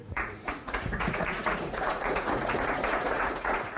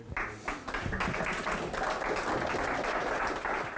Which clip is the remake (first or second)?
first